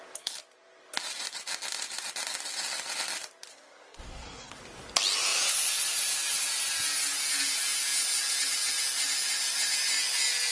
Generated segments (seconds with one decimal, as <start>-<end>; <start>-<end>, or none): 3.5-4.6